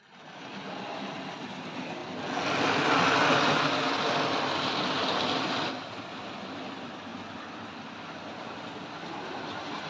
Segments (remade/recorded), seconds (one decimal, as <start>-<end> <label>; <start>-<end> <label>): 0.0-9.9 recorded